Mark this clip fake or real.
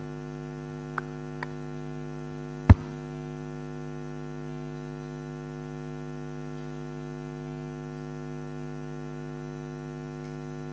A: real